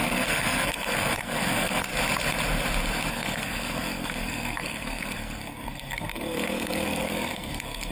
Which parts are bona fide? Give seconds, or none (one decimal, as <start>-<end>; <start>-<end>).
1.9-3.1